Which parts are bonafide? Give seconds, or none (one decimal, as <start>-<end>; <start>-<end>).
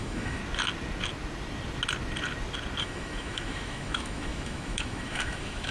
0.4-2.8